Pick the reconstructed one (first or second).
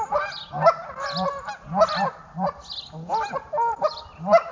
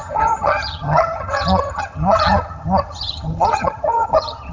second